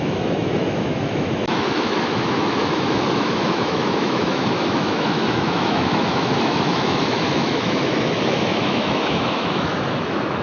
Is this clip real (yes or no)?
no